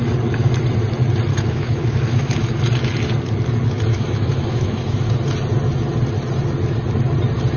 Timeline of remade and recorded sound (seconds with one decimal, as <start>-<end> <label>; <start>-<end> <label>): 0.0-1.3 recorded; 1.3-2.6 remade; 2.6-3.9 recorded; 3.9-5.1 remade; 5.1-7.6 recorded